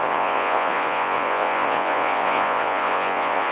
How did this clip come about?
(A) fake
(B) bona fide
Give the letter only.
A